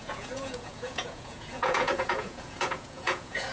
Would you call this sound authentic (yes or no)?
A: no